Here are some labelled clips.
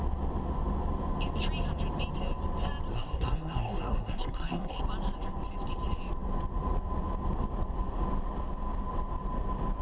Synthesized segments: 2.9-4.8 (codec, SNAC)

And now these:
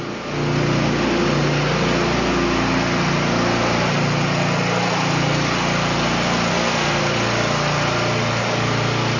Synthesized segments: 6.5-7.0 (codec, SNAC)

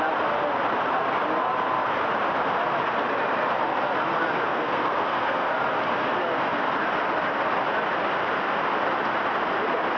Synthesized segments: 4.5-5.5 (codec, SNAC)

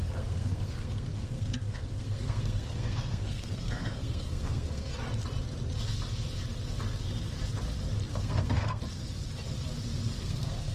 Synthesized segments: 0.0-4.9 (codec, SNAC); 8.1-8.8; 10.2-10.7

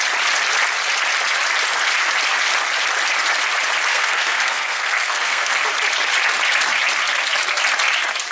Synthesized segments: 3.9-5.5 (codec, SNAC)

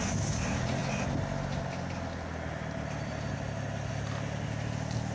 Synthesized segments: none

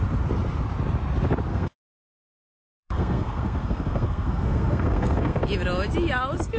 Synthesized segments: 1.5-5.4 (codec, SNAC)